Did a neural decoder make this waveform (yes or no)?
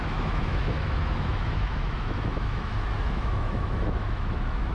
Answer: yes